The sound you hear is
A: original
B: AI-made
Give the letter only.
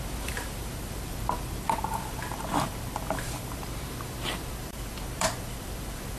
B